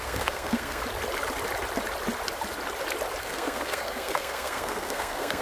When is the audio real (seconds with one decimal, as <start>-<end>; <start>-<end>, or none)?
0.8-3.2